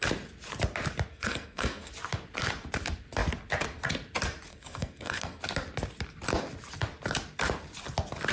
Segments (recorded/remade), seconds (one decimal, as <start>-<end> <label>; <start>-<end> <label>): 0.0-1.1 recorded; 1.1-1.9 remade; 1.9-4.5 recorded; 4.5-5.4 remade; 5.4-8.3 recorded